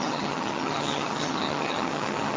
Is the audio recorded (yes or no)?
no